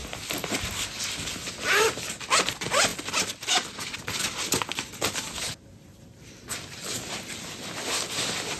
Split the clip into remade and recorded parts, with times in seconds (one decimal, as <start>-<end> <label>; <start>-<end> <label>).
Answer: 0.0-8.6 recorded